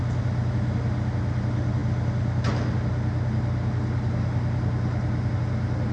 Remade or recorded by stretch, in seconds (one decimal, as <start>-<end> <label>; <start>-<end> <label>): 0.0-5.9 recorded